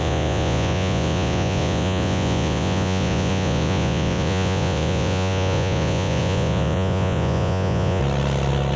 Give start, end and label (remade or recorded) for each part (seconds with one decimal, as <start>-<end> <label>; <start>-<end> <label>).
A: 0.0-8.0 remade; 8.0-8.8 recorded